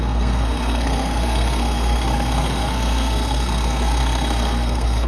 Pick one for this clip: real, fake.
fake